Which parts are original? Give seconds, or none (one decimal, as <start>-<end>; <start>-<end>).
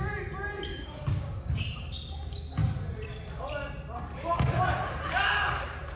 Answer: 0.0-0.7; 1.5-6.0